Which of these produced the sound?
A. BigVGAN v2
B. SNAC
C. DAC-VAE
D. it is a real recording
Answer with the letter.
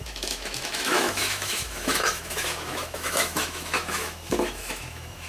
C